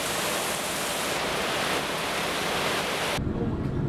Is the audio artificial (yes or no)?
no